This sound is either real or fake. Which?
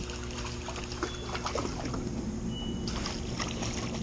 real